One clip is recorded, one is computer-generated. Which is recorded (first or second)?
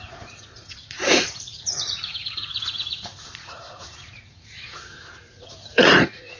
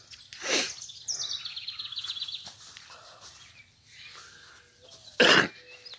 second